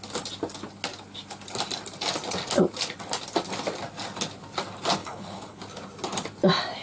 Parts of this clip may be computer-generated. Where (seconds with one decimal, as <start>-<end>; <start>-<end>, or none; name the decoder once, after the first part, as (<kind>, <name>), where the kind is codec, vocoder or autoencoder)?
5.0-5.6 (codec, HILCodec)